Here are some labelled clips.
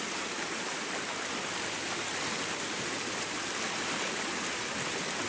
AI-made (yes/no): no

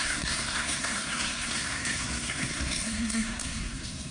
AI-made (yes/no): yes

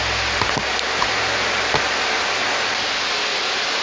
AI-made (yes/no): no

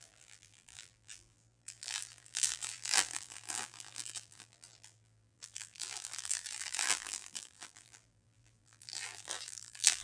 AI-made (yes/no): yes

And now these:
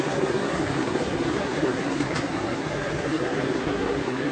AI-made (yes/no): yes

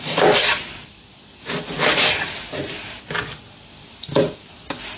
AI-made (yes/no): no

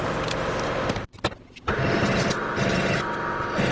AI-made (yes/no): no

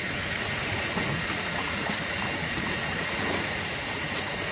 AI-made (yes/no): yes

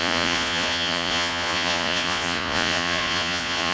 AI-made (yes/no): yes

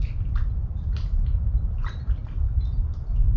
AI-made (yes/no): no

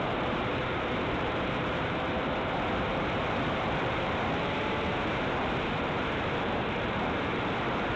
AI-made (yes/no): yes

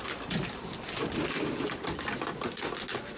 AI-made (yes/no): no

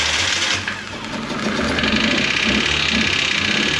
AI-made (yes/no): no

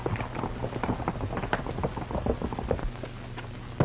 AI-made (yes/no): no